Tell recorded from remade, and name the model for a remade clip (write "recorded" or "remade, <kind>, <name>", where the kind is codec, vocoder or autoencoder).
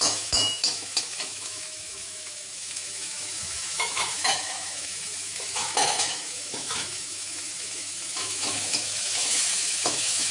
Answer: remade, autoencoder, DAC-VAE